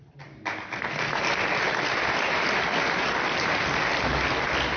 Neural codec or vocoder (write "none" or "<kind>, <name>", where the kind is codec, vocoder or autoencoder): none